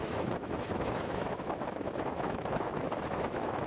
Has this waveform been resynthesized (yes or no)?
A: yes